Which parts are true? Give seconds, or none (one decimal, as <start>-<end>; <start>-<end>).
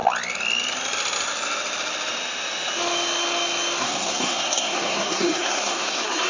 0.0-3.8